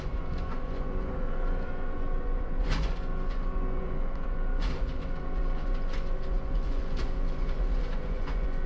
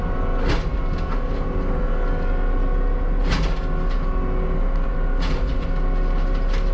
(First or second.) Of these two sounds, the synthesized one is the first